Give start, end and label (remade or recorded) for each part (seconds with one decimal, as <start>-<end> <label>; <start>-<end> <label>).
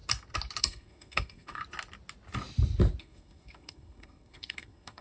0.0-0.6 recorded; 0.6-1.6 remade; 1.6-3.0 recorded; 3.0-5.0 remade